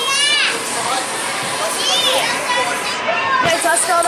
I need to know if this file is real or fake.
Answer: fake